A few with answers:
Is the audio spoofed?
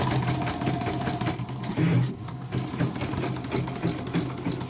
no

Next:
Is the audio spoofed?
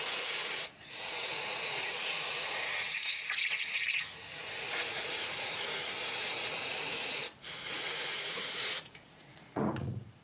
yes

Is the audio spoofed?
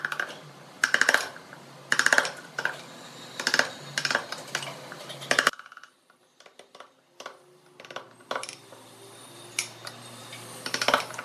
no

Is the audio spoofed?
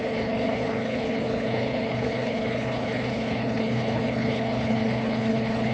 yes